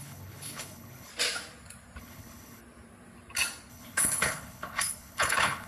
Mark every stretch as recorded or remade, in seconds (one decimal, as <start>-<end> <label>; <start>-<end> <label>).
0.0-1.1 remade; 1.1-2.0 recorded; 2.0-2.6 remade; 2.6-3.7 recorded; 3.7-5.7 remade